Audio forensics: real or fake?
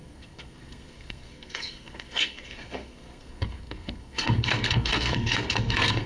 fake